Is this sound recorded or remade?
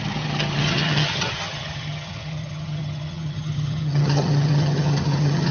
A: remade